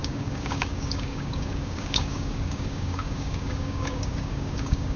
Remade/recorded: remade